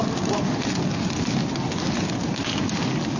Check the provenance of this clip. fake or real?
real